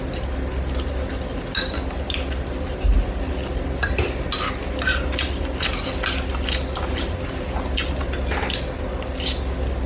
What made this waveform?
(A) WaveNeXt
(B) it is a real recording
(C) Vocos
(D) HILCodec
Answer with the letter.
B